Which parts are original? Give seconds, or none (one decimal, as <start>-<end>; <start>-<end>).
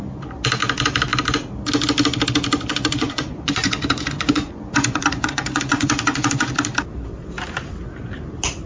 0.0-2.7; 6.5-8.7